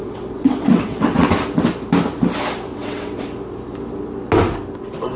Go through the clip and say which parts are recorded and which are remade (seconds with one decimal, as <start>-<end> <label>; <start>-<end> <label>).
0.0-1.3 remade; 1.3-2.7 recorded; 2.7-3.2 remade; 3.2-5.2 recorded